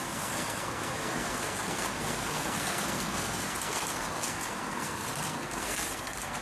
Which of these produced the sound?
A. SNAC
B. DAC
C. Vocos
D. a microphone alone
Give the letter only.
A